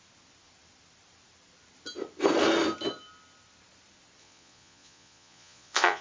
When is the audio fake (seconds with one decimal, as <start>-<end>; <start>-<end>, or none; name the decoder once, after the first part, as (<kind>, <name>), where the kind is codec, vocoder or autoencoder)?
4.2-6.0 (vocoder, Vocos)